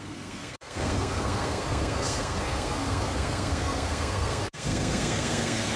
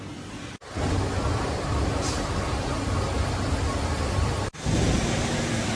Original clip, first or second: second